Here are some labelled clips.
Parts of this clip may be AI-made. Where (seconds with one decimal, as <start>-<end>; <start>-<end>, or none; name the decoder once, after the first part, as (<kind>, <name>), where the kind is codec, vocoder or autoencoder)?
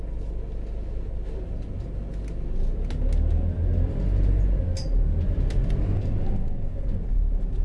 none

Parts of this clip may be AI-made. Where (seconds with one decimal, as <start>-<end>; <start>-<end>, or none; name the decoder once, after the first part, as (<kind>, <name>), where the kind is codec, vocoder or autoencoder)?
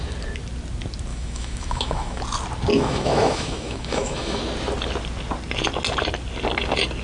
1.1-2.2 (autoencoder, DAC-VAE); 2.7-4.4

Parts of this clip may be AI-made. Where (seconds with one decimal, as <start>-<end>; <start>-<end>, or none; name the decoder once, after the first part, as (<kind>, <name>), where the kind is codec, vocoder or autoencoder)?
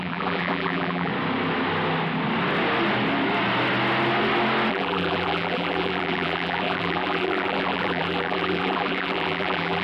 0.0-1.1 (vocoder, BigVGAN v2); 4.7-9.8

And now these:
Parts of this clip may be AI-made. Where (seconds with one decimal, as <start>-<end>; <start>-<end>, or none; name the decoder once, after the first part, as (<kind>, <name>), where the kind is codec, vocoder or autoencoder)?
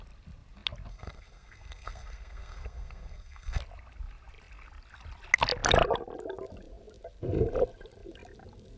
0.9-3.6 (codec, SNAC)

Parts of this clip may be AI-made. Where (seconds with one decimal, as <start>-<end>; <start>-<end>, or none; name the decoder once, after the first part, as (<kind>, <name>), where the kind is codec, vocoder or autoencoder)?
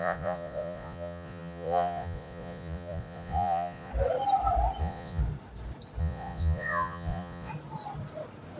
0.0-3.9 (vocoder, Vocos); 4.8-5.2; 6.0-7.5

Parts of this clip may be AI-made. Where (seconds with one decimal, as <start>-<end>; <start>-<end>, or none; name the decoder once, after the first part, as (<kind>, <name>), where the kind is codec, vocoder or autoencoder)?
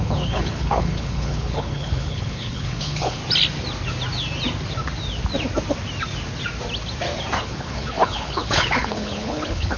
0.0-3.2 (codec, HILCodec); 7.4-9.8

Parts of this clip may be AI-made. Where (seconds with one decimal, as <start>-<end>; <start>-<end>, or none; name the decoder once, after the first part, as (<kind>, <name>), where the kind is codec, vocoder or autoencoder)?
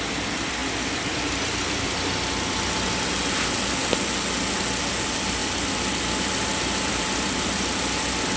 none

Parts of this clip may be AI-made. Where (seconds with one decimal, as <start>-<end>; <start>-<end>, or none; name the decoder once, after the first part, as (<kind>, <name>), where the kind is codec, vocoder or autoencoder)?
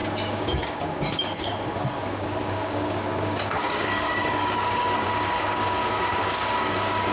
0.0-7.1 (codec, DAC)